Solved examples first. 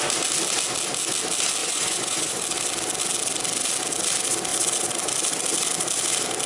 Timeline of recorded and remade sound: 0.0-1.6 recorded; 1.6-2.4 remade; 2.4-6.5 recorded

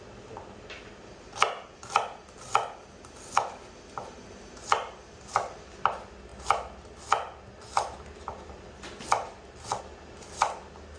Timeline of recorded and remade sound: 0.0-11.0 recorded